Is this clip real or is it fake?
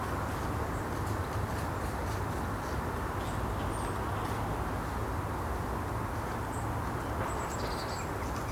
real